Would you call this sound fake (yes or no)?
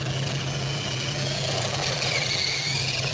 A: yes